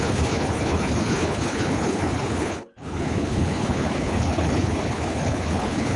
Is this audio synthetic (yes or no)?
yes